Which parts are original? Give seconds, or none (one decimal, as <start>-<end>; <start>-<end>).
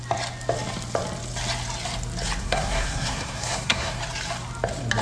0.0-2.4; 4.0-5.0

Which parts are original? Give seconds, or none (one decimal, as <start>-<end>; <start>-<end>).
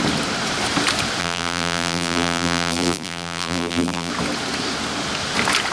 0.0-1.2; 4.1-5.7